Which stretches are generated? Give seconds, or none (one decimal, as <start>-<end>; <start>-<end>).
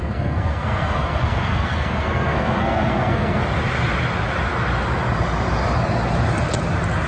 0.0-3.4